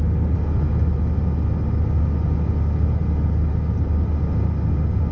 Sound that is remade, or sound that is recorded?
recorded